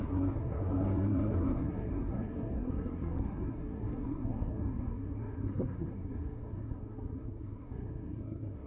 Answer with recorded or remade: remade